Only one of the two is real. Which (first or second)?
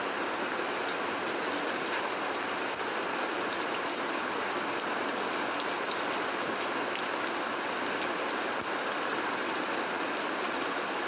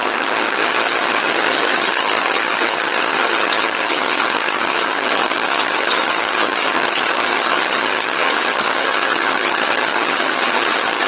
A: first